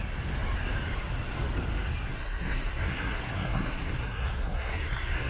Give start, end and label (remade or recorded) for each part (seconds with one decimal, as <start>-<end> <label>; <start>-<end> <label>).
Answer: 0.0-2.1 recorded; 2.1-5.3 remade

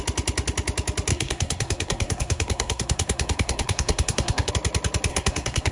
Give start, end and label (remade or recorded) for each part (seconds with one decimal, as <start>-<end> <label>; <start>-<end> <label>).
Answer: 0.0-1.1 recorded; 1.1-4.5 remade; 4.5-5.1 recorded; 5.1-5.7 remade

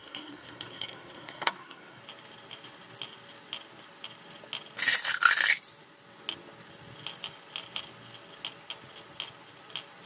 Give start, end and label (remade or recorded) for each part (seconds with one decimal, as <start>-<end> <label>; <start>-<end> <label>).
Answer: 0.0-2.0 remade; 2.0-10.1 recorded